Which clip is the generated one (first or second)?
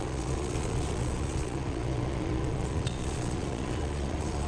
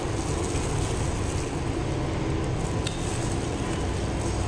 first